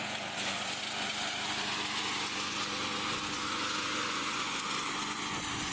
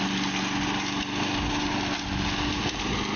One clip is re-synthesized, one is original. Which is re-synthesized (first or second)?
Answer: first